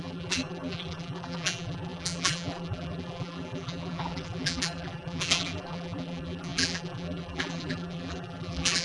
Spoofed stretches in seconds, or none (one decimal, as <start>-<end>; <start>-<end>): 0.0-8.8